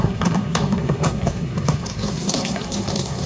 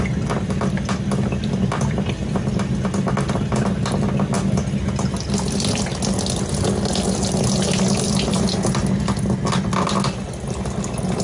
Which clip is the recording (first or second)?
second